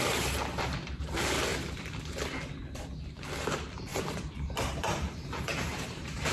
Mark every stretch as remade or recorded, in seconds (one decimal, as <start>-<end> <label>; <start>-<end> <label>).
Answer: 0.0-1.5 recorded; 1.5-2.2 remade; 2.2-3.9 recorded; 3.9-6.3 remade